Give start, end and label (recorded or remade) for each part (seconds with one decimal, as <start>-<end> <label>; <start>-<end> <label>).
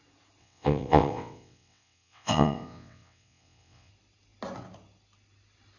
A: 0.0-0.4 recorded; 0.4-3.9 remade; 3.9-5.8 recorded